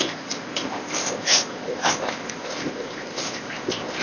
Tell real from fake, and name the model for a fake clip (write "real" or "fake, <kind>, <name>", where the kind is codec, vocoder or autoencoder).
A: fake, codec, ZipCodec